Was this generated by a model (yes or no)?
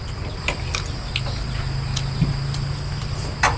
no